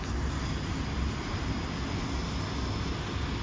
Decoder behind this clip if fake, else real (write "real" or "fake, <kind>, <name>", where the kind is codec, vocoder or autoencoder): real